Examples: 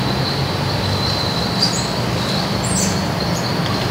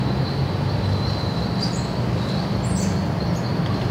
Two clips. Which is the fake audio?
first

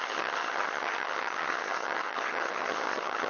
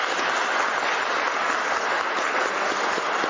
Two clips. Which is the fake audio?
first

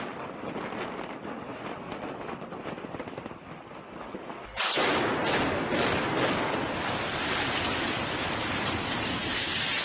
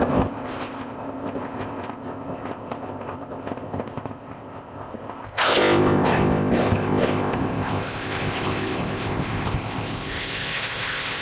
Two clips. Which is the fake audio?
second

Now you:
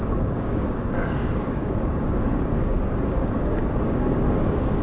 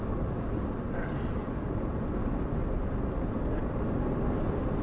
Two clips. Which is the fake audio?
first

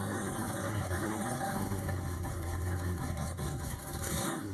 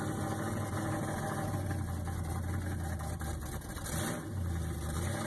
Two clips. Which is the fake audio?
first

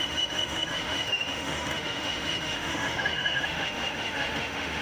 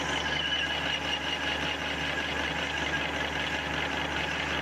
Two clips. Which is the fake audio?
first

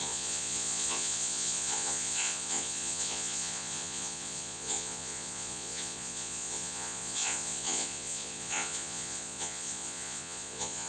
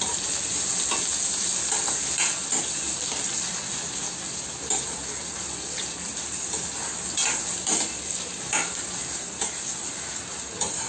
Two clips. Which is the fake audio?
first